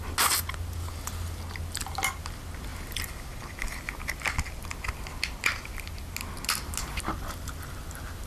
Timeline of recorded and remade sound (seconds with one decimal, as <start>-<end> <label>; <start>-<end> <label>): 0.0-8.3 recorded